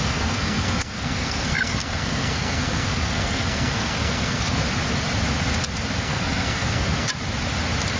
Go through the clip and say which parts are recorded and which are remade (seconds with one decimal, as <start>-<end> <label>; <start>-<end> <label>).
0.0-4.6 remade; 4.6-6.0 recorded; 6.0-7.1 remade; 7.1-8.0 recorded